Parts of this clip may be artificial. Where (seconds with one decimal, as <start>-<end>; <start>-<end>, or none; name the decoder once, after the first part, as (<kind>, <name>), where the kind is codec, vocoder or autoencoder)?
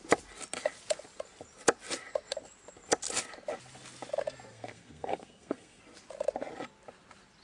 4.5-5.8 (codec, SNAC)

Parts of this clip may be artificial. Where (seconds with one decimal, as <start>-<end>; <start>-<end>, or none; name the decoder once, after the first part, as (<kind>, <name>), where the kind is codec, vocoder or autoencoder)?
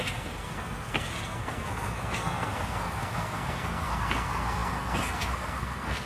0.0-6.1 (codec, SNAC)